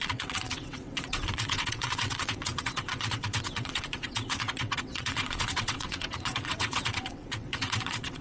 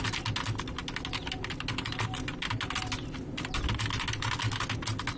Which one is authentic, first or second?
second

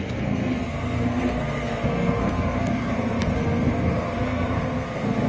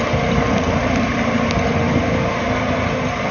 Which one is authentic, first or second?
second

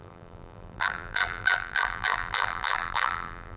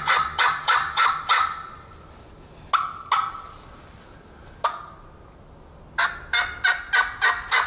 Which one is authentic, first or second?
second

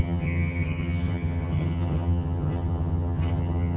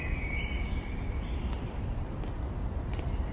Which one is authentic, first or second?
second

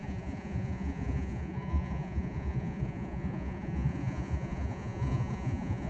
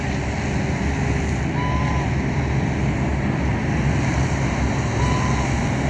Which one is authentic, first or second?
second